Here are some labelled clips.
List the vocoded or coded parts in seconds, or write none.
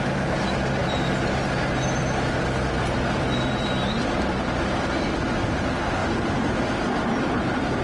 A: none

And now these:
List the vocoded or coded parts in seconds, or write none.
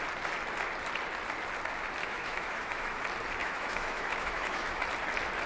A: 2.0-3.0 (autoencoder, DAC-VAE); 3.4-4.8